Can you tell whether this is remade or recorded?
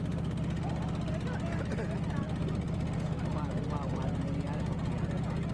recorded